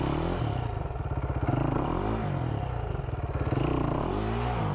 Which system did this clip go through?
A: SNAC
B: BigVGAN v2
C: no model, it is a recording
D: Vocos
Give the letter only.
C